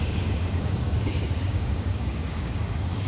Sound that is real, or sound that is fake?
fake